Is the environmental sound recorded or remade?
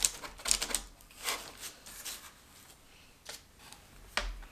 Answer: recorded